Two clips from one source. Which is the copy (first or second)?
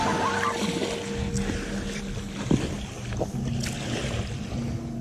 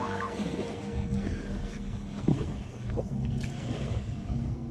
second